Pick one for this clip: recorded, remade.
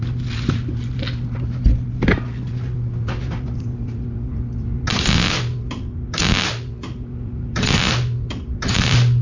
recorded